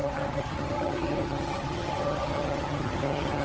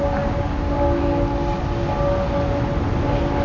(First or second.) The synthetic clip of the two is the first